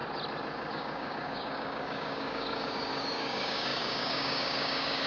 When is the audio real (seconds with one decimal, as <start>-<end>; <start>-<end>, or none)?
0.0-0.7